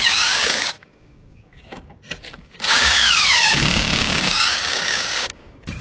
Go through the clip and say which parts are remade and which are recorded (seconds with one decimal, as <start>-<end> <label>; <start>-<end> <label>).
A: 0.0-5.8 remade